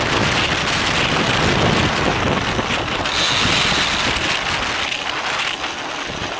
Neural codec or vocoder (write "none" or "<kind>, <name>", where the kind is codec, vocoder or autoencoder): none